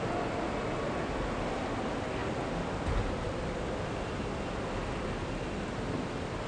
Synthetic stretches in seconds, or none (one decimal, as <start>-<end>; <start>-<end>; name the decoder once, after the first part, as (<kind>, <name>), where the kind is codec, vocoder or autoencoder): none